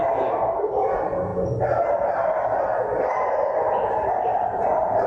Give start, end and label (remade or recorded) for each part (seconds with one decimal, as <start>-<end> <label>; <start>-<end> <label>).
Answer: 0.0-4.3 recorded; 4.3-5.1 remade